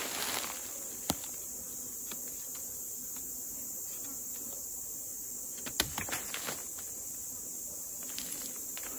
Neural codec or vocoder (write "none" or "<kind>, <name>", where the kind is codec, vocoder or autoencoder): none